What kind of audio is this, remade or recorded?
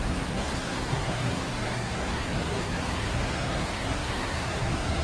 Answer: remade